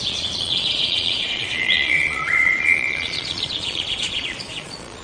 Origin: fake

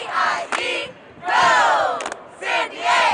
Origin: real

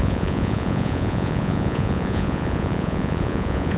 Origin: fake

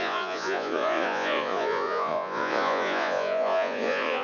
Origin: fake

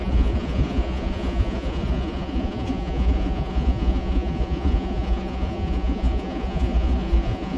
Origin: fake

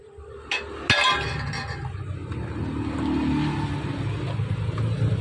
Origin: real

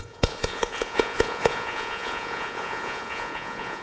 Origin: fake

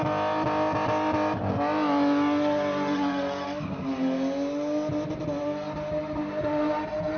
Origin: real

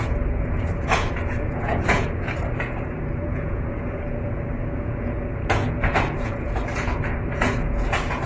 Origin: fake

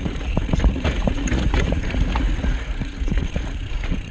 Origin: fake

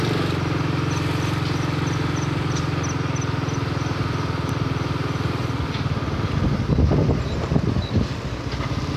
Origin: real